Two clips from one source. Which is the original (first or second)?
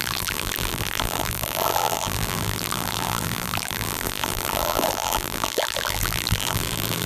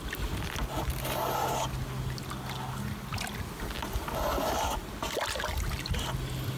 second